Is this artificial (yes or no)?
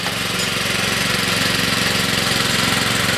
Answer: yes